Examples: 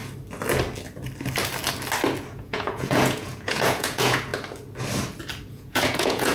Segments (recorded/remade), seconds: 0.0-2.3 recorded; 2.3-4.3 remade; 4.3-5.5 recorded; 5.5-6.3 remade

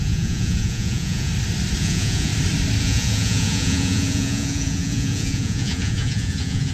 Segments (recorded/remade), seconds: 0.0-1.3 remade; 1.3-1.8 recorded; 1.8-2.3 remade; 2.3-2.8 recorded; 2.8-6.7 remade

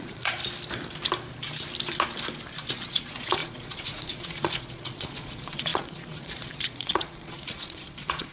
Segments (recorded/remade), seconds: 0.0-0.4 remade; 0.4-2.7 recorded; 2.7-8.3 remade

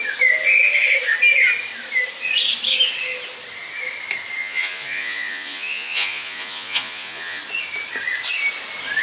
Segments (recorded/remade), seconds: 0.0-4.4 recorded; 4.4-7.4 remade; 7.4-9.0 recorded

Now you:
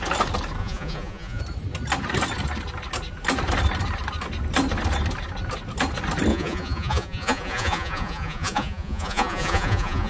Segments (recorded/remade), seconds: 0.0-0.6 recorded; 0.6-1.4 remade; 1.4-6.3 recorded; 6.3-10.1 remade